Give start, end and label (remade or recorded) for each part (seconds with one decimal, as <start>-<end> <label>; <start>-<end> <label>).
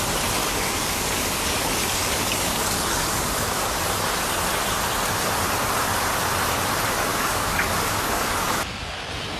0.0-0.4 recorded; 0.4-3.9 remade; 3.9-7.1 recorded; 7.1-8.8 remade; 8.8-9.4 recorded